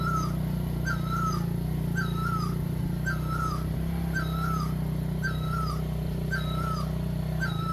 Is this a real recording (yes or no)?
yes